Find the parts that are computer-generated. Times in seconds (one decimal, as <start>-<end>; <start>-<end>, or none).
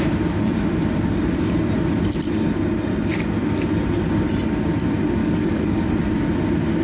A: 5.2-5.8